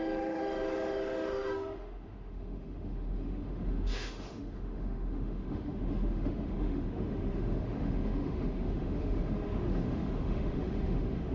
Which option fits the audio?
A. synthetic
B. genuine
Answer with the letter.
A